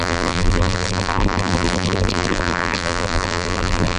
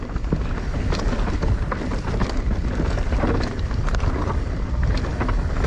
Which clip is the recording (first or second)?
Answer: second